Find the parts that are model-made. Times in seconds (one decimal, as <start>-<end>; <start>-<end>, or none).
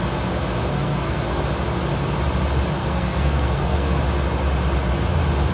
0.7-1.4; 2.8-4.0